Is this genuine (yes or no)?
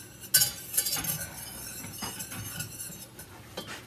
yes